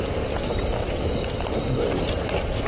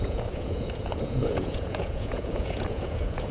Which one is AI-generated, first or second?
second